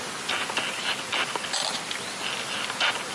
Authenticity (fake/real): real